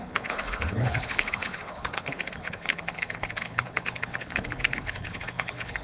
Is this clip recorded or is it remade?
remade